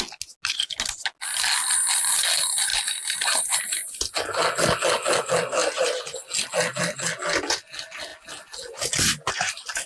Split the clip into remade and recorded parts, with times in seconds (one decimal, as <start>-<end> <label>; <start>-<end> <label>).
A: 0.0-2.7 recorded; 2.7-3.6 remade; 3.6-9.9 recorded